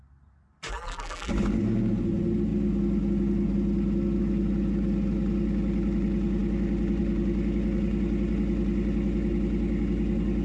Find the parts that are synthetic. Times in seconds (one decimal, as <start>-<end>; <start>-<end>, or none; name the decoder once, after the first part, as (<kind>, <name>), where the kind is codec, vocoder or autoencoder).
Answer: 0.7-1.3 (vocoder, BigVGAN v2)